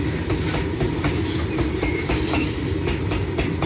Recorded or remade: recorded